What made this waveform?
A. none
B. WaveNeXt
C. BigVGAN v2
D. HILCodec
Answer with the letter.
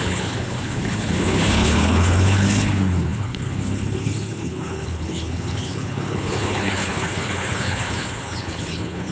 D